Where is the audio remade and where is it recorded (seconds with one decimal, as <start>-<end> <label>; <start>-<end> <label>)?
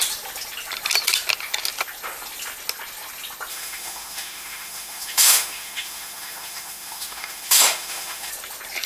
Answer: 0.0-3.5 recorded; 3.5-8.3 remade; 8.3-8.9 recorded